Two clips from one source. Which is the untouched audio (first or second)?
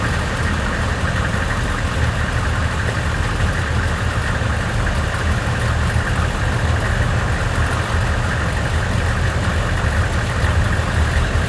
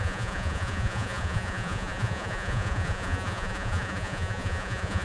first